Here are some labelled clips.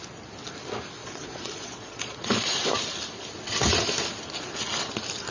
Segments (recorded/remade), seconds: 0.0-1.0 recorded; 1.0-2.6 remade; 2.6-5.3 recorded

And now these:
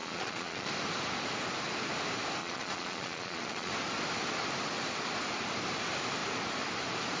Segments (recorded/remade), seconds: 0.0-0.7 remade; 0.7-2.4 recorded; 2.4-3.7 remade; 3.7-7.2 recorded

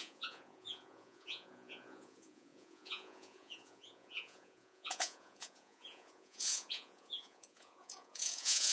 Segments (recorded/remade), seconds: 0.0-8.7 remade